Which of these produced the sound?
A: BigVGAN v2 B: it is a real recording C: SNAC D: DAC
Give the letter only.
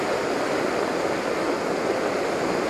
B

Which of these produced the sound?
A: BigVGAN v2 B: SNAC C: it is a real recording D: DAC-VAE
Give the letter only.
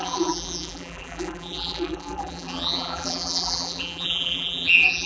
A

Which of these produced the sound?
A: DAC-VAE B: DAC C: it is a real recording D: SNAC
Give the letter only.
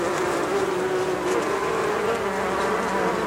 C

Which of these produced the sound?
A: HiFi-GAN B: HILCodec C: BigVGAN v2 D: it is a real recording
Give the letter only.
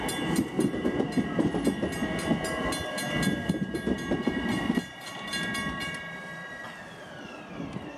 D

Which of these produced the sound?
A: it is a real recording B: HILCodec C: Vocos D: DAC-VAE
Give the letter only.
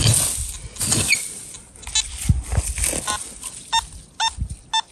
A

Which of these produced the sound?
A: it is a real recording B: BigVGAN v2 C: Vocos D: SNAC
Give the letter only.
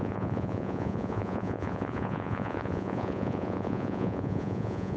C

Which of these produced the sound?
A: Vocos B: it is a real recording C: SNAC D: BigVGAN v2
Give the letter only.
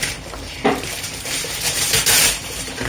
D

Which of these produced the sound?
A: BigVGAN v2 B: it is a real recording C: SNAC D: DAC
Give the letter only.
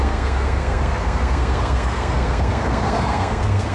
C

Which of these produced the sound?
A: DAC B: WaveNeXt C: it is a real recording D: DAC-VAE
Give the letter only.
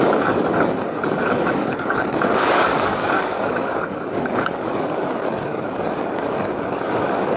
A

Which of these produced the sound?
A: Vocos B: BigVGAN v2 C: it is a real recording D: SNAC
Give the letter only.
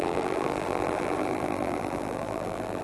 B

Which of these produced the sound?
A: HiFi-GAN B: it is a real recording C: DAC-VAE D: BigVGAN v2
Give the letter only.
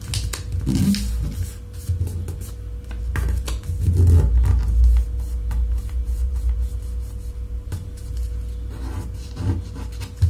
B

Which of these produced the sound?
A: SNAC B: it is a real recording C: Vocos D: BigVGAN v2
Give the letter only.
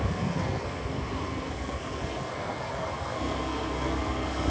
A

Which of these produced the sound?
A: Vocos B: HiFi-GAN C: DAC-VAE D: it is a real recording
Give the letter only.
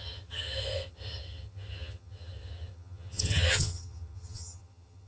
B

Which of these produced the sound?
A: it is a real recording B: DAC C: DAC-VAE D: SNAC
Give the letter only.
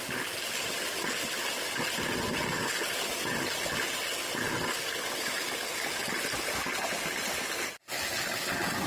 A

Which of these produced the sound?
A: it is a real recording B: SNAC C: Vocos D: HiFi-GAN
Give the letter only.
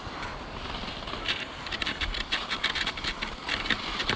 A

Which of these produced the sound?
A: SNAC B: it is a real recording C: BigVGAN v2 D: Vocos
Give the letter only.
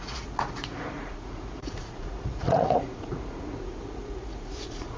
D